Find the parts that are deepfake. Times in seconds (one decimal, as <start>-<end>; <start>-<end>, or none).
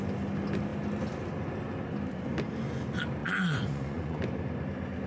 3.2-4.2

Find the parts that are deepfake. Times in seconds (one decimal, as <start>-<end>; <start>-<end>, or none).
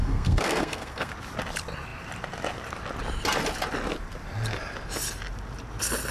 0.0-1.1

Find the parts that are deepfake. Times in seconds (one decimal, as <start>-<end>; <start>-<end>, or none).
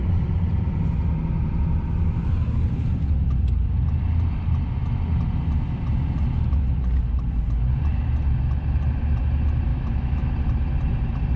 9.7-10.3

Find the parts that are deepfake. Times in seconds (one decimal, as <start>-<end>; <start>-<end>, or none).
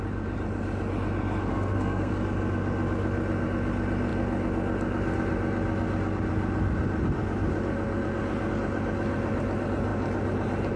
1.5-2.1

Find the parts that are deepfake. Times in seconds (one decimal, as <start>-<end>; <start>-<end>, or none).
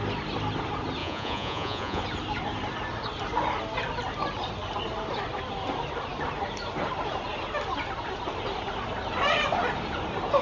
1.0-2.0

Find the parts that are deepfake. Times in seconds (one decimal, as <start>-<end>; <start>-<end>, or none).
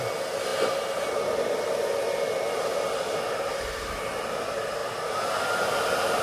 none